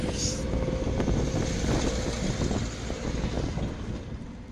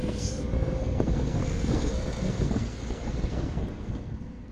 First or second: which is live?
first